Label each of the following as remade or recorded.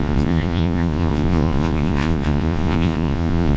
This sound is remade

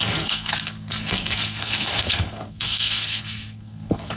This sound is remade